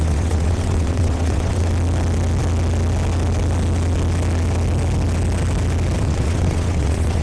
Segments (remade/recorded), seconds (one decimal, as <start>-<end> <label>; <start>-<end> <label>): 0.0-1.7 remade; 1.7-6.0 recorded; 6.0-7.2 remade